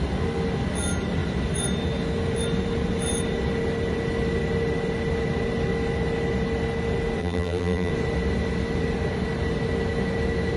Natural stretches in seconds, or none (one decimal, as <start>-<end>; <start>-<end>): 0.0-7.2; 7.9-10.6